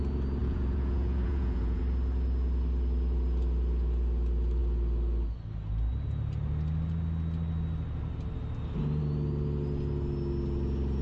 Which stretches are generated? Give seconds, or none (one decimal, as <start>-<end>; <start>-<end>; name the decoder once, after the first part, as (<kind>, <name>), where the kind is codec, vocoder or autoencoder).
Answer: 0.4-1.8 (vocoder, Vocos)